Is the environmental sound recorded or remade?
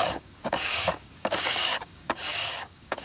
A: remade